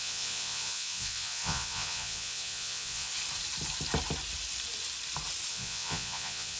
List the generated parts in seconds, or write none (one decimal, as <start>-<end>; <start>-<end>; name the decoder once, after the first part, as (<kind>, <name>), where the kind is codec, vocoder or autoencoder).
0.0-3.1 (vocoder, Vocos); 5.5-6.6